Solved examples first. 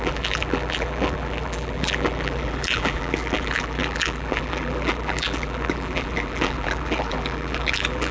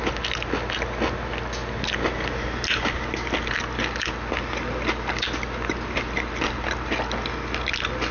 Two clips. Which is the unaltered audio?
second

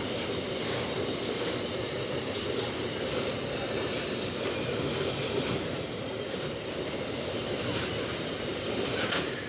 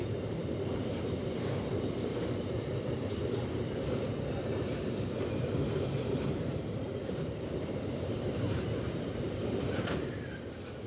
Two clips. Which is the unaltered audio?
first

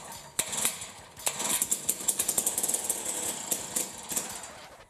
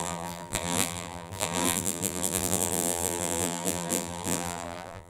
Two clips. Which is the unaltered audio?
first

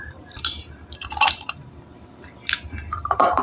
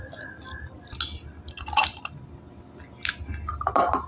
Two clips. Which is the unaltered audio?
second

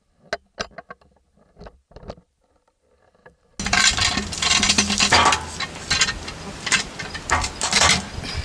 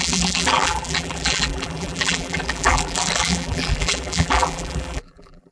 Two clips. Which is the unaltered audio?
first